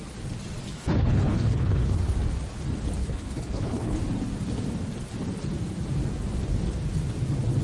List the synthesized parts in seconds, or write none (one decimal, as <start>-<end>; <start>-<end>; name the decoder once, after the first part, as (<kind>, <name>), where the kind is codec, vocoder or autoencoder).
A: 0.7-1.9 (codec, HILCodec); 3.0-4.0